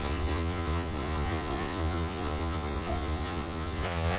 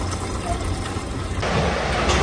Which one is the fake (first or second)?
first